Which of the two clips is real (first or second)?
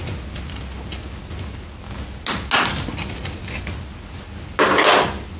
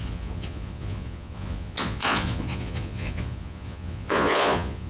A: first